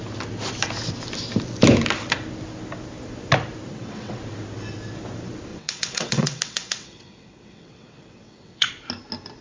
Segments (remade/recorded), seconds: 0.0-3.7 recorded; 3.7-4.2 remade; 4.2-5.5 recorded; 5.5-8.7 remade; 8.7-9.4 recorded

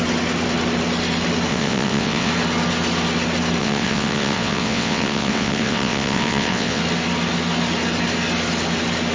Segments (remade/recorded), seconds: 0.0-1.5 recorded; 1.5-2.3 remade; 2.3-3.6 recorded; 3.6-6.8 remade; 6.8-9.1 recorded

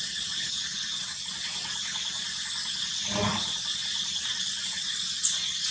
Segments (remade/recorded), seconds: 0.0-0.7 recorded; 0.7-1.3 remade; 1.3-4.3 recorded; 4.3-4.9 remade; 4.9-5.7 recorded

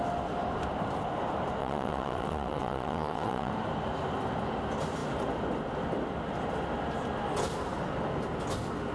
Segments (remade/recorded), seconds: 0.0-1.6 recorded; 1.6-3.5 remade; 3.5-8.9 recorded